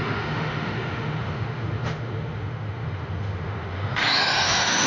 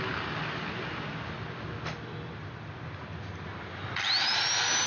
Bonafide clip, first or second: second